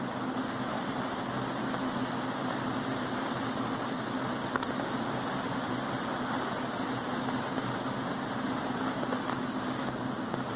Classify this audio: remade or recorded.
recorded